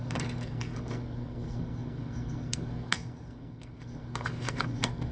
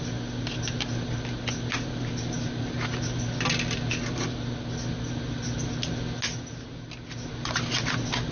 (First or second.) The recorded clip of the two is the second